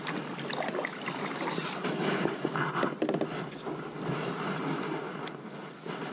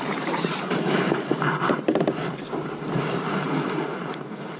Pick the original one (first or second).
first